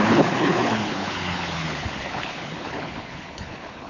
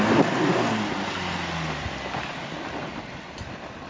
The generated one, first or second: first